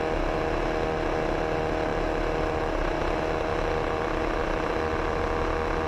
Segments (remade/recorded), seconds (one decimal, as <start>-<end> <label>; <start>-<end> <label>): 0.0-1.9 recorded; 1.9-3.0 remade; 3.0-3.5 recorded; 3.5-5.2 remade; 5.2-5.9 recorded